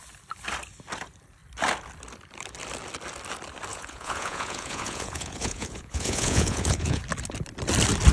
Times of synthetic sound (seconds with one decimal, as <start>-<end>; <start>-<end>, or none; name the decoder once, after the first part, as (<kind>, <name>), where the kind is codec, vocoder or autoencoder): 3.7-7.0 (vocoder, Vocos)